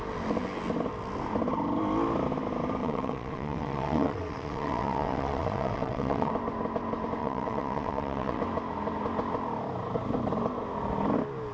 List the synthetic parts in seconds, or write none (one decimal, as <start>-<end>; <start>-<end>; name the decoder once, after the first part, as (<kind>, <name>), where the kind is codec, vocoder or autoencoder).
2.8-6.3 (vocoder, WaveNeXt); 7.2-8.4